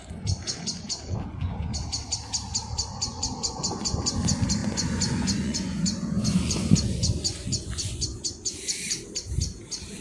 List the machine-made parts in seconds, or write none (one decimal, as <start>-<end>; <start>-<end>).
0.0-1.7; 3.1-4.1; 4.6-8.6